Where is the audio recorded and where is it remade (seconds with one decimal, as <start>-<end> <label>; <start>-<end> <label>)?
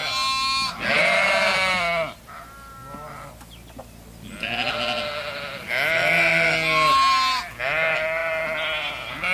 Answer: 0.0-9.3 recorded